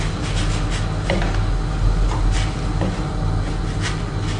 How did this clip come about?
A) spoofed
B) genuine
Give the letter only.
B